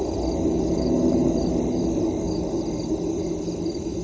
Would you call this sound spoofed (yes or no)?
no